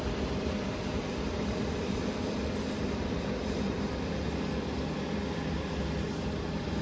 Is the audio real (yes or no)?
no